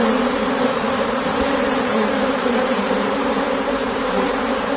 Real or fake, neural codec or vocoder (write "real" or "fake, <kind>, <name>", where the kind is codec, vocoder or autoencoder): fake, vocoder, BigVGAN v2